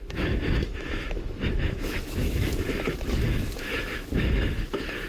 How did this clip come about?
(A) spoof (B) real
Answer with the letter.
A